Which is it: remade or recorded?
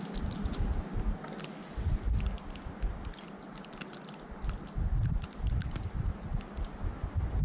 recorded